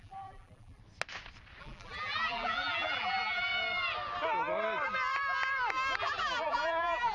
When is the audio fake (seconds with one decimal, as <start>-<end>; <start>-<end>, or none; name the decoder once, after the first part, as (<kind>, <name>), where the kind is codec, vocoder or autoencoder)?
0.0-0.8 (vocoder, BigVGAN v2); 1.6-3.5; 6.0-7.1